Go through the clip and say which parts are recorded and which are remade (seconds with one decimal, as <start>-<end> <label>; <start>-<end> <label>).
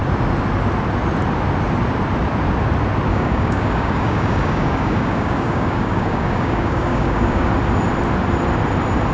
0.0-3.1 recorded; 3.1-7.5 remade; 7.5-9.1 recorded